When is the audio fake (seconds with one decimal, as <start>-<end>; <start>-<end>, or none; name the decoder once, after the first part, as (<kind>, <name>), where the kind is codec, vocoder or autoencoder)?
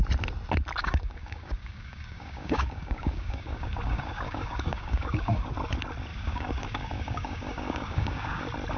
0.8-5.5 (codec, DAC); 6.1-8.4